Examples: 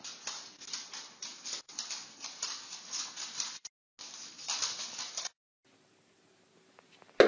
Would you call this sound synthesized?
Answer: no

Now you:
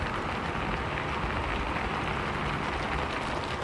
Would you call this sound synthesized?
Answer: no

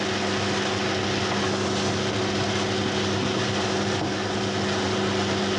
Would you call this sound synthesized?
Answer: no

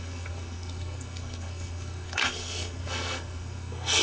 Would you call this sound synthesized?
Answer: yes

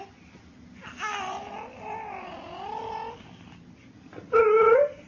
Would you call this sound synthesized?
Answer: no